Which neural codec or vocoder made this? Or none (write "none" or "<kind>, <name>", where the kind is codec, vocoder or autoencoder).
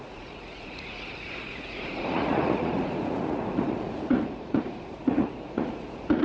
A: vocoder, Vocos